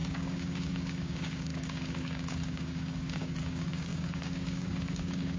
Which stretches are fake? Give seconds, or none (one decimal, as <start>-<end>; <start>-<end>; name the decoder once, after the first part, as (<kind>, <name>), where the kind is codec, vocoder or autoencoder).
0.0-5.4 (codec, DAC)